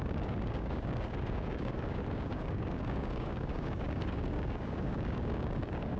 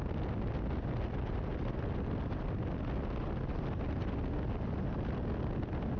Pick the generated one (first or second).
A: first